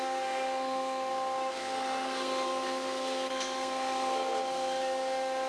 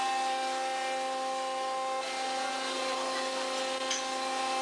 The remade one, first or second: first